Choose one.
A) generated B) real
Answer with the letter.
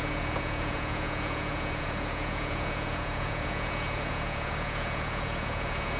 A